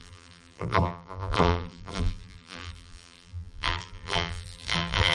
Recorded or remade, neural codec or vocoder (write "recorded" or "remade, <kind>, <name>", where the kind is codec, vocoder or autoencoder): remade, vocoder, BigVGAN v2